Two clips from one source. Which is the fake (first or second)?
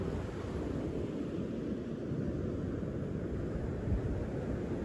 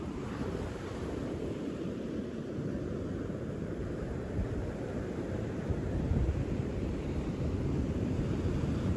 second